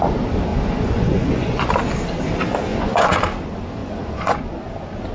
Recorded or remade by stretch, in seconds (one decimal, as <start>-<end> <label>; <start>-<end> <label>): 0.0-0.5 recorded; 0.5-1.7 remade; 1.7-2.7 recorded; 2.7-3.2 remade; 3.2-3.8 recorded; 3.8-4.4 remade; 4.4-5.1 recorded